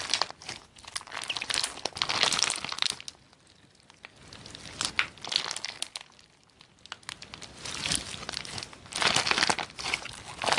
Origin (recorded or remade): recorded